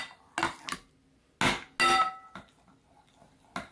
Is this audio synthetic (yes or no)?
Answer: no